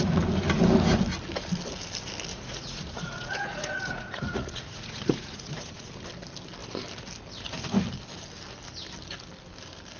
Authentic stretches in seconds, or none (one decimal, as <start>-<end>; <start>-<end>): 0.0-2.3; 5.9-10.0